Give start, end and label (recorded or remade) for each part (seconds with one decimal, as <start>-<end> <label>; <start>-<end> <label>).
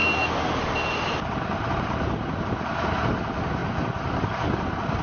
0.0-5.0 recorded